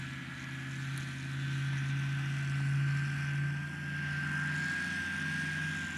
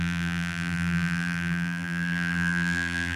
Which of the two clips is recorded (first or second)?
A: first